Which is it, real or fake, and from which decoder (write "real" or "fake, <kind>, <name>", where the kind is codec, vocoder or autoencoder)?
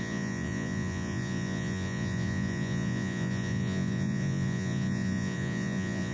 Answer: fake, vocoder, Vocos